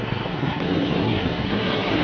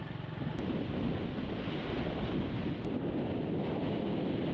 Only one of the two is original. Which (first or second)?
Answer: second